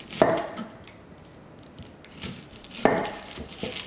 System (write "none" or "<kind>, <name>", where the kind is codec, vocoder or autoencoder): none